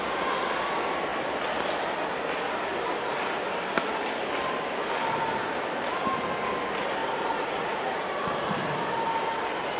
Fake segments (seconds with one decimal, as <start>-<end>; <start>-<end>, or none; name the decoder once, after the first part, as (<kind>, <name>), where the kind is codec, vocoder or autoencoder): 7.0-8.1 (vocoder, Vocos)